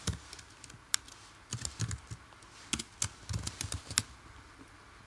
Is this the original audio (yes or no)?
yes